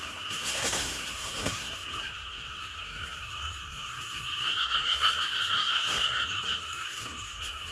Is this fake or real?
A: fake